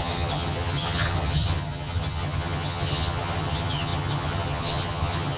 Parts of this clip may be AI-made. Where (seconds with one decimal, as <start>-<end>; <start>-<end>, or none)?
0.0-5.4